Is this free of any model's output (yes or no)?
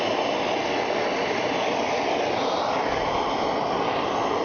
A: yes